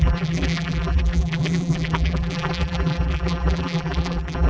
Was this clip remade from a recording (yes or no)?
yes